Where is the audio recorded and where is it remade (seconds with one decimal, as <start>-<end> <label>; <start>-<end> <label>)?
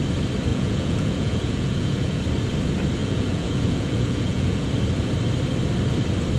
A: 0.0-0.5 recorded; 0.5-2.2 remade; 2.2-3.0 recorded; 3.0-4.7 remade; 4.7-6.4 recorded